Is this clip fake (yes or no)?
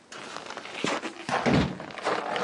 no